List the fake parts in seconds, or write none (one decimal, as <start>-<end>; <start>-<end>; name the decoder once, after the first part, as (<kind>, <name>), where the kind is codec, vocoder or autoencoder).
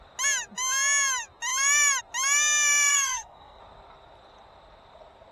2.9-3.6 (codec, SNAC)